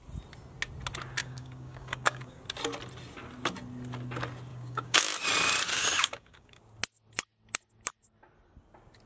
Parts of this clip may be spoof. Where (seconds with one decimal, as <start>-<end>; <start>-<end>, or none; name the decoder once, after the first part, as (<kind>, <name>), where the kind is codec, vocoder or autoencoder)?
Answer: 1.2-2.4 (codec, DAC); 4.5-5.0; 5.7-6.6